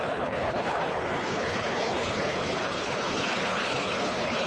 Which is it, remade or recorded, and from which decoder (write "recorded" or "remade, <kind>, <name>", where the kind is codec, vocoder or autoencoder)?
remade, codec, HILCodec